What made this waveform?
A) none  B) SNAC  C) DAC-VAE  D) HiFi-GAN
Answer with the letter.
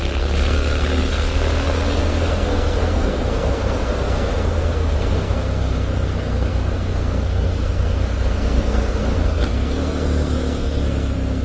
B